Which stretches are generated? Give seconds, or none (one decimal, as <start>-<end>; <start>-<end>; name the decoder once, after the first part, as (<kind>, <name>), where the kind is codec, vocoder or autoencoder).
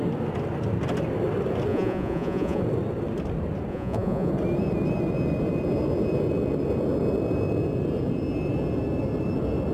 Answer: 1.7-2.6 (vocoder, Vocos); 3.7-4.3